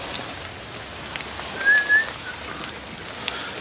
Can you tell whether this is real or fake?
real